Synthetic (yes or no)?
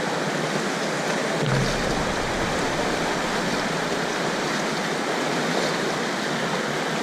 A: no